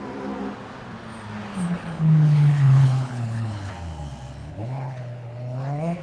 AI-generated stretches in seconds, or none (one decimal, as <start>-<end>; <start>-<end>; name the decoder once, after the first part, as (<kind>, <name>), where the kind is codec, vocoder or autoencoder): 1.5-3.7 (codec, HILCodec); 4.4-6.0